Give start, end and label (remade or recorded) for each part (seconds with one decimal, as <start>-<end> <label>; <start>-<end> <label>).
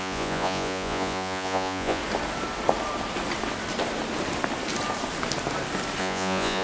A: 0.0-2.0 remade; 2.0-6.0 recorded; 6.0-6.6 remade